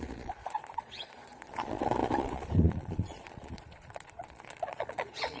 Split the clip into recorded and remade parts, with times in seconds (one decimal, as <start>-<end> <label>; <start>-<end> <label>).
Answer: 0.0-5.4 remade